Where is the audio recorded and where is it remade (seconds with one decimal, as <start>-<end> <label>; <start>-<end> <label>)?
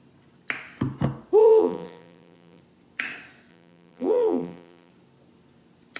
0.0-1.4 recorded; 1.4-2.6 remade; 2.6-3.5 recorded; 3.5-4.9 remade; 4.9-6.0 recorded